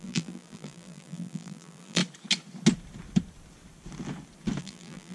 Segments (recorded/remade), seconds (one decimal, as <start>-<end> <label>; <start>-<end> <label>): 0.0-2.0 remade; 2.0-4.6 recorded; 4.6-5.1 remade

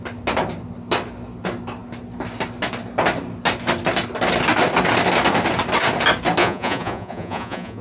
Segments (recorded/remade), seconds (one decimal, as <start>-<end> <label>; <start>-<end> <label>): 0.0-6.4 recorded; 6.4-7.8 remade

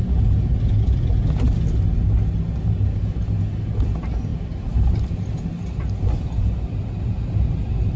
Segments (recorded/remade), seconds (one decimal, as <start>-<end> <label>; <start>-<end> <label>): 0.0-4.3 recorded; 4.3-6.9 remade; 6.9-8.0 recorded

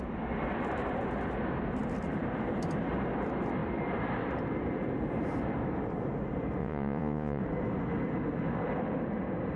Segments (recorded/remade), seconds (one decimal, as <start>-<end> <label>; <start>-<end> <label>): 0.0-6.6 recorded; 6.6-7.4 remade; 7.4-9.6 recorded

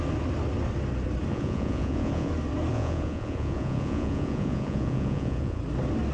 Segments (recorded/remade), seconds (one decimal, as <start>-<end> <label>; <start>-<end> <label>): 0.0-1.3 recorded; 1.3-2.3 remade; 2.3-2.7 recorded; 2.7-5.6 remade; 5.6-6.1 recorded